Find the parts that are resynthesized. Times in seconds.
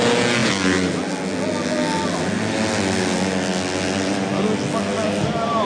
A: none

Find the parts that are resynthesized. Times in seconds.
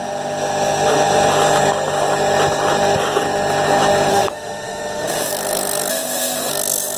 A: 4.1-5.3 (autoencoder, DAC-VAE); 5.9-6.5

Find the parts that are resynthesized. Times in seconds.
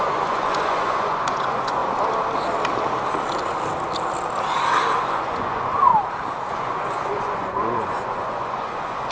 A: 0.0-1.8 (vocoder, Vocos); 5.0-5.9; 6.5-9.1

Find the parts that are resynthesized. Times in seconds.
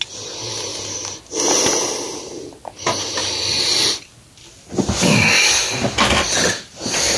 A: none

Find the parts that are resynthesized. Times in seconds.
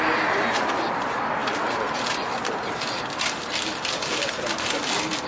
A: none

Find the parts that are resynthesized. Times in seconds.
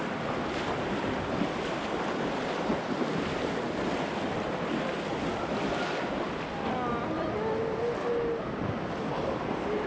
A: none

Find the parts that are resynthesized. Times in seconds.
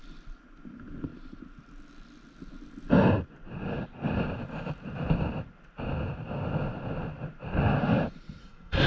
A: 8.4-8.9 (codec, SNAC)